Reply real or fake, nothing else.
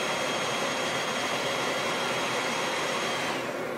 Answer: real